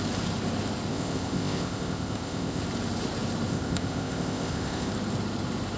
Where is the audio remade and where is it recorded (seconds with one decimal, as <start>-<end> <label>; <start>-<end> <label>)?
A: 0.0-0.9 recorded; 0.9-2.6 remade; 2.6-3.5 recorded; 3.5-4.9 remade; 4.9-5.8 recorded